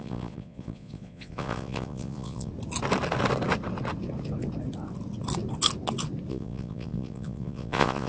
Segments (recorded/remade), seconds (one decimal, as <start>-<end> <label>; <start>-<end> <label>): 0.0-2.5 remade; 2.5-6.3 recorded; 6.3-8.1 remade